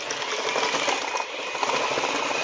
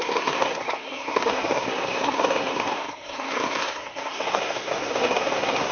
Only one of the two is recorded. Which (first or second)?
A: first